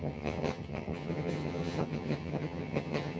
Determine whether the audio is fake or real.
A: fake